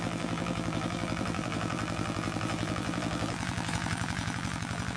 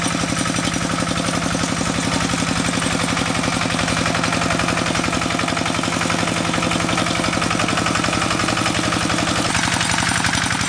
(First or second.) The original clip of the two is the second